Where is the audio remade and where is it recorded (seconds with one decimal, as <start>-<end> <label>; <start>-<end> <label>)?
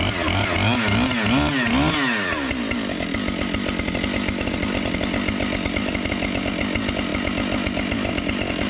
0.0-8.7 recorded